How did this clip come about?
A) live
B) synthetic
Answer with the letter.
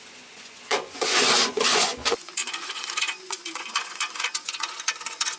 B